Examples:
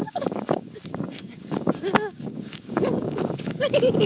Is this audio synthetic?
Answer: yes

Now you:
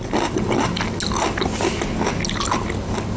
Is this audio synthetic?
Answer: no